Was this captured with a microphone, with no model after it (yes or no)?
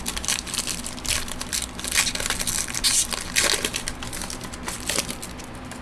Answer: yes